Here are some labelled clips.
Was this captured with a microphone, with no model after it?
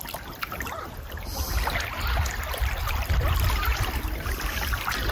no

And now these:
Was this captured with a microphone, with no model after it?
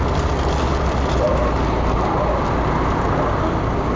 yes